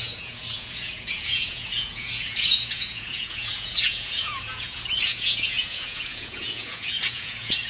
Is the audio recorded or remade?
remade